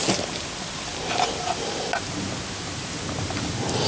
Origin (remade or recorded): recorded